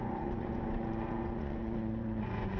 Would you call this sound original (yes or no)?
no